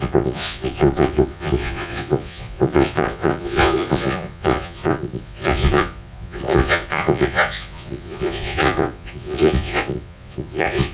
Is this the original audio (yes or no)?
no